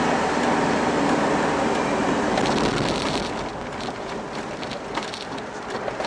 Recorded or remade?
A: recorded